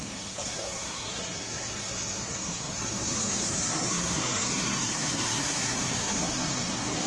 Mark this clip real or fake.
fake